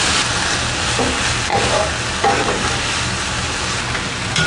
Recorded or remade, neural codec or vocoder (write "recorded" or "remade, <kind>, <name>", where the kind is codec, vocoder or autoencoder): recorded